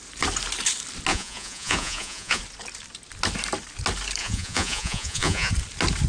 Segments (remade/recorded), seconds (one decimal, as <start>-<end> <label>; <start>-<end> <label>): 0.0-1.1 recorded; 1.1-2.4 remade; 2.4-4.2 recorded; 4.2-5.5 remade; 5.5-6.1 recorded